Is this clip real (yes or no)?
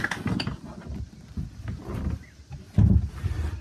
yes